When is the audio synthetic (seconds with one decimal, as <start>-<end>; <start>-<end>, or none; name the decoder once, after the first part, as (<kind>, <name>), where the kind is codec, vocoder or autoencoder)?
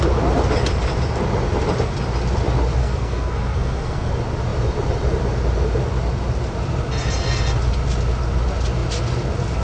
2.8-4.1 (codec, SNAC)